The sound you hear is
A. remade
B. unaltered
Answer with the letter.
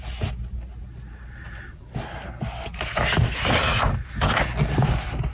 B